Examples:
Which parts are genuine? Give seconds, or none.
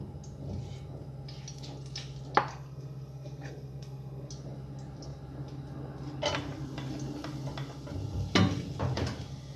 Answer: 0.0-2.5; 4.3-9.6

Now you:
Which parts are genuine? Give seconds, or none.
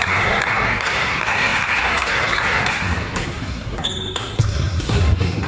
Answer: none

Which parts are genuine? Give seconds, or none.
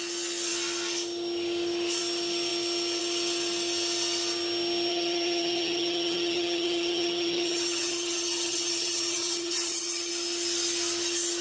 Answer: 0.0-4.9; 10.1-11.4